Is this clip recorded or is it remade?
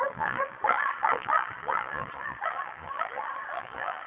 remade